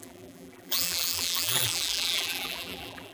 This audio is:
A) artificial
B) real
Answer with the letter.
A